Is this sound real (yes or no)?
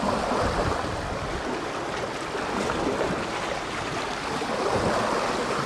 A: yes